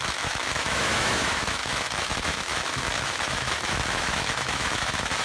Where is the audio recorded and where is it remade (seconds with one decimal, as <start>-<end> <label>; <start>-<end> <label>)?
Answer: 0.0-5.2 remade